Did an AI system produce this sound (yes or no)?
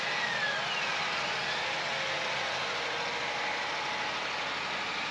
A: no